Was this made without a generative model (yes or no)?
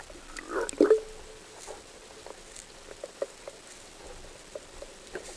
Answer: yes